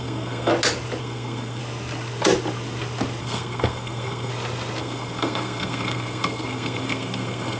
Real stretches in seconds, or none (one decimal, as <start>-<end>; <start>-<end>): 0.5-1.0; 1.6-3.2; 4.3-4.8